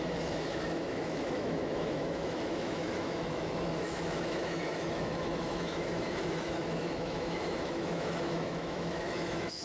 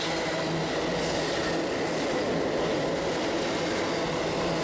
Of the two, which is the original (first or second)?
second